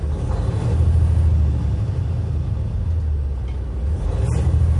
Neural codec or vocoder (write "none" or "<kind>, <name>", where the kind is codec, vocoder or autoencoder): none